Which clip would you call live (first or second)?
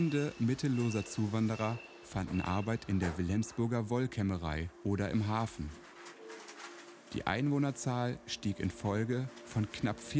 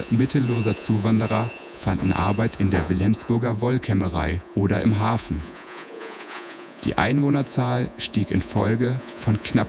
first